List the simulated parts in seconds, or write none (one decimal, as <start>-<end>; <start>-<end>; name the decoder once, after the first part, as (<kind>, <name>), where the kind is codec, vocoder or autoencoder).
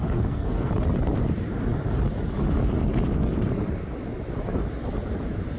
0.0-0.7 (codec, SNAC)